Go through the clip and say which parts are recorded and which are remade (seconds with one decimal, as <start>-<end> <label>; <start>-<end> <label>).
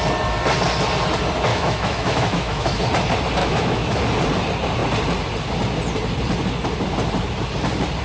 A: 0.0-1.5 recorded; 1.5-2.8 remade; 2.8-3.4 recorded; 3.4-4.0 remade; 4.0-8.0 recorded